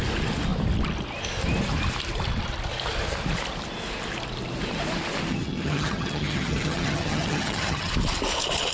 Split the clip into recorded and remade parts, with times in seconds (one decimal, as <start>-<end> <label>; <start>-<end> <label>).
0.0-5.3 recorded; 5.3-7.9 remade; 7.9-8.7 recorded